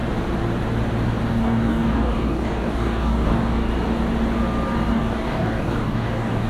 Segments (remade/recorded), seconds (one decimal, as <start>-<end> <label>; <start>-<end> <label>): 0.0-1.3 recorded; 1.3-3.7 remade; 3.7-4.9 recorded; 4.9-6.5 remade